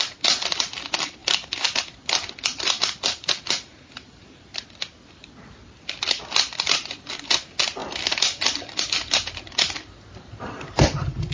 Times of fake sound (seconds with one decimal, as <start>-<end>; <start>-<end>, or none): none

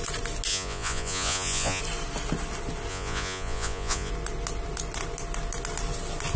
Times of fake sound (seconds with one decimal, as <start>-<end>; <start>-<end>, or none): 0.5-1.8; 2.9-4.1

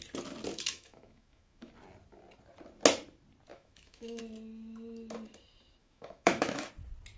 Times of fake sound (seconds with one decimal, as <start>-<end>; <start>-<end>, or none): 0.5-1.7; 3.5-4.2; 5.8-6.7